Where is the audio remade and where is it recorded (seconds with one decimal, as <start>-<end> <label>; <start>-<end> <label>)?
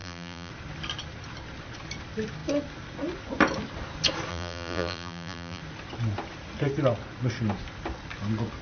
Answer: 0.0-0.5 remade; 0.5-4.3 recorded; 4.3-5.6 remade; 5.6-8.6 recorded